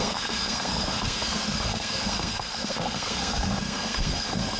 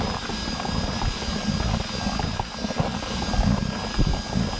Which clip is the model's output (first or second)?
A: first